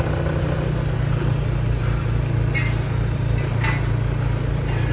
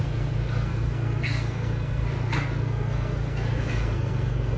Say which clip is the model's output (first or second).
second